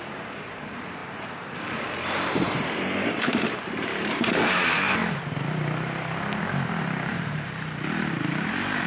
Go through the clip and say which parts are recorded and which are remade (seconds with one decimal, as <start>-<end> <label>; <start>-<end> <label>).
0.0-5.0 remade; 5.0-7.1 recorded; 7.1-8.9 remade